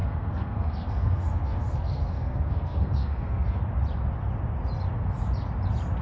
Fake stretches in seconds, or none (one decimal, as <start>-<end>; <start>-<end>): 0.0-3.6